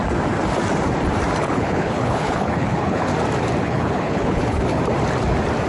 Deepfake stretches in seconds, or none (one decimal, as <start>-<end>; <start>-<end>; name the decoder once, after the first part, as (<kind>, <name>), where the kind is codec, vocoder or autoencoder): 1.4-3.1 (codec, HILCodec); 3.6-4.8